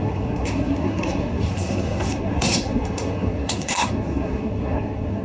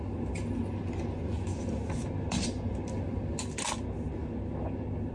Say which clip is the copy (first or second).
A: first